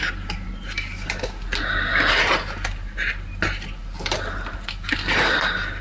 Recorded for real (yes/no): yes